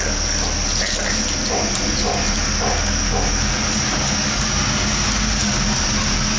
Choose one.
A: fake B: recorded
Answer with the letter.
B